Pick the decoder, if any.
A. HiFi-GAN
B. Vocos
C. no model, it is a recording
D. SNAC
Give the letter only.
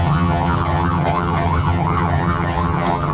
A